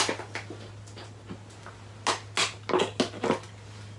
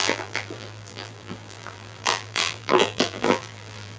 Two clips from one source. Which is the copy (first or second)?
second